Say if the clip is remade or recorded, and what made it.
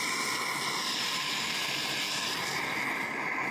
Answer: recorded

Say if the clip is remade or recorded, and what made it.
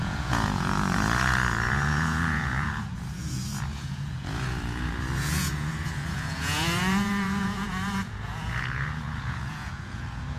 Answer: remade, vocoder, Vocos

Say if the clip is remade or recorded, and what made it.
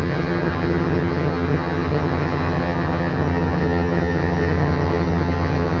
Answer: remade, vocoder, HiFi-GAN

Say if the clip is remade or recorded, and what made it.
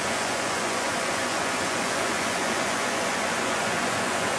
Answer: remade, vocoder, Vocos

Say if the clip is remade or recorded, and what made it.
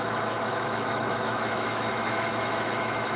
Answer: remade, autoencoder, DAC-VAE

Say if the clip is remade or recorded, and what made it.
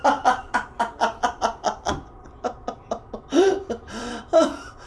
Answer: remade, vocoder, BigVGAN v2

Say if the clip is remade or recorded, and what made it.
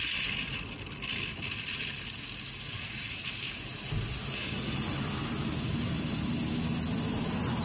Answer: recorded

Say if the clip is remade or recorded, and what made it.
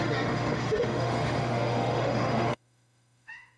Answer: remade, autoencoder, DAC-VAE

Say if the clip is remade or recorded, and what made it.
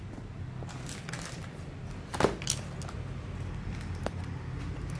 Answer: recorded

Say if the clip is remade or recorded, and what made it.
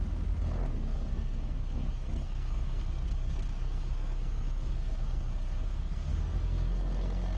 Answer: remade, codec, SNAC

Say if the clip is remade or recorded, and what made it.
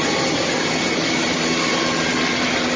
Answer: recorded